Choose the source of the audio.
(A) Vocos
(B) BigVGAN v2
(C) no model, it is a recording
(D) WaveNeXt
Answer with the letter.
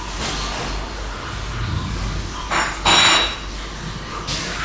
C